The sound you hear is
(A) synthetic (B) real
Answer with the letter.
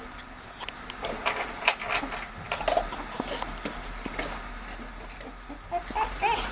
B